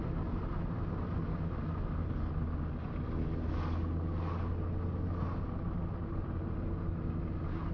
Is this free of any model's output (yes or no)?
yes